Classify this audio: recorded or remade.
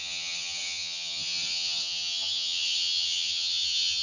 remade